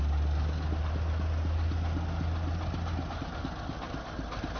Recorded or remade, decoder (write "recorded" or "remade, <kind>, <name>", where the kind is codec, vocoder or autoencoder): recorded